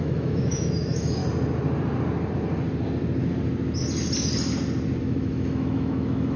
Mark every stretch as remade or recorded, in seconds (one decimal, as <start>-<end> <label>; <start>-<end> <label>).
0.0-1.2 remade; 1.2-5.0 recorded; 5.0-6.4 remade